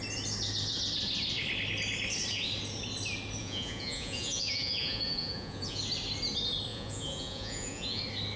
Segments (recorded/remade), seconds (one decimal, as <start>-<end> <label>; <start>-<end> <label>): 0.0-3.4 recorded; 3.4-5.8 remade; 5.8-6.7 recorded; 6.7-8.0 remade; 8.0-8.4 recorded